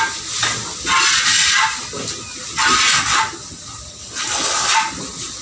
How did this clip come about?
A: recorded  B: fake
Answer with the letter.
A